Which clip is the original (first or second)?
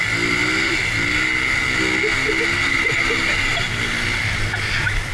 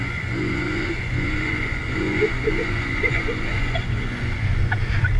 first